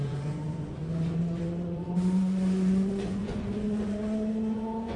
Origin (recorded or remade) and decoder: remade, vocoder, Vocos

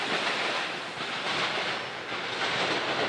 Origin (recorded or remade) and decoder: recorded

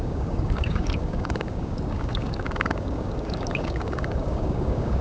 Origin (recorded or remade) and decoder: remade, codec, DAC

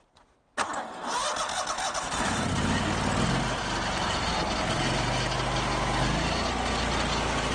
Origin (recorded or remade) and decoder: recorded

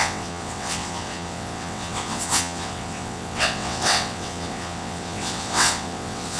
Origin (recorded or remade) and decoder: remade, vocoder, WaveNeXt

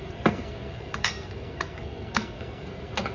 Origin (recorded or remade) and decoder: remade, codec, SNAC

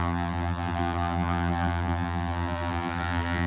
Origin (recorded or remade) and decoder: remade, vocoder, BigVGAN v2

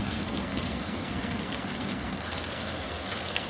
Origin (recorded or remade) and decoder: remade, codec, SNAC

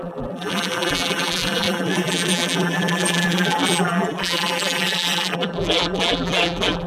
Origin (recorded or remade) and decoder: remade, vocoder, BigVGAN v2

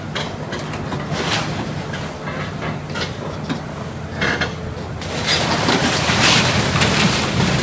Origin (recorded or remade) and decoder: recorded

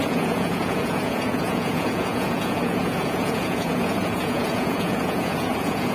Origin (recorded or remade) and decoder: remade, vocoder, Vocos